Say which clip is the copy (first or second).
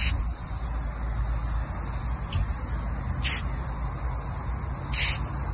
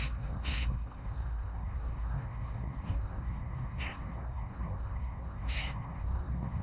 second